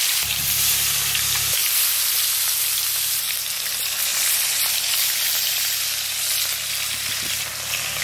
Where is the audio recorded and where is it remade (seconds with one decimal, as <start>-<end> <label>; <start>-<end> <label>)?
0.0-1.6 remade; 1.6-2.1 recorded; 2.1-4.1 remade; 4.1-8.0 recorded